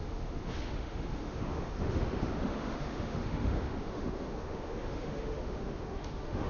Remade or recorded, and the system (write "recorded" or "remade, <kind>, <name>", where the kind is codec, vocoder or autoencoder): remade, autoencoder, DAC-VAE